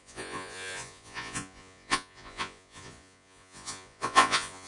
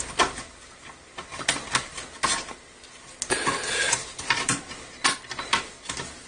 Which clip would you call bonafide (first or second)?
second